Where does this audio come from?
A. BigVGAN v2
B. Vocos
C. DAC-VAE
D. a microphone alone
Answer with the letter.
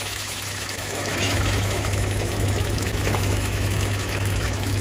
C